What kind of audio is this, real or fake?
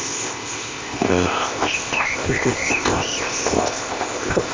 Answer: fake